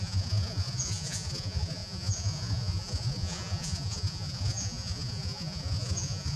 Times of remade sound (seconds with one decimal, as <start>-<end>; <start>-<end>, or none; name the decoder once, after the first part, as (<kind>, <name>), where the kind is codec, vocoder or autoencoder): 0.0-6.4 (vocoder, Vocos)